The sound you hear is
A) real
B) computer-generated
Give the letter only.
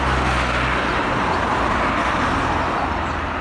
A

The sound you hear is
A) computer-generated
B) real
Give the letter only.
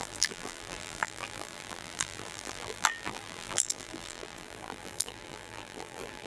A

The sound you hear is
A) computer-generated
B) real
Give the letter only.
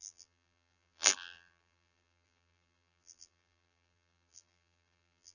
A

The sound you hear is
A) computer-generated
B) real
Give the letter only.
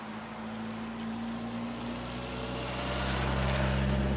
B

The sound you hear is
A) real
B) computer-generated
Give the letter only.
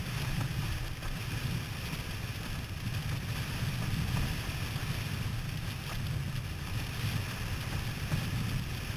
B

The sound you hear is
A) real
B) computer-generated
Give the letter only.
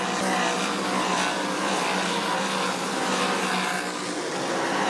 A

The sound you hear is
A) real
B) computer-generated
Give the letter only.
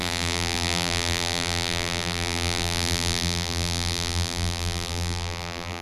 B